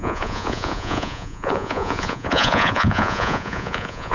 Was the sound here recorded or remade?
remade